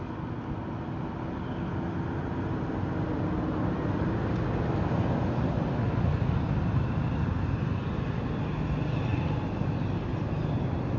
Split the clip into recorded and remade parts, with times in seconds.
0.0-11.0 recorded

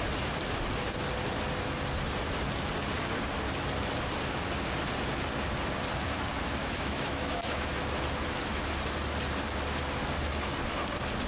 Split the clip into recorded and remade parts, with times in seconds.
0.0-6.6 recorded; 6.6-7.7 remade; 7.7-11.3 recorded

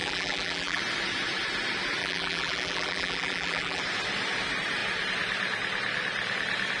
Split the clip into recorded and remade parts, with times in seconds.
0.0-0.8 remade; 0.8-2.0 recorded; 2.0-3.8 remade; 3.8-6.8 recorded

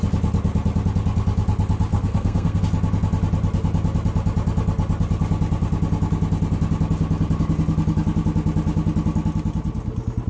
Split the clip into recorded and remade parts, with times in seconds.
0.0-1.9 recorded; 1.9-2.6 remade; 2.6-10.3 recorded

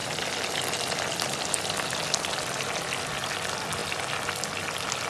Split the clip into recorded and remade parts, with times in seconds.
0.0-5.1 recorded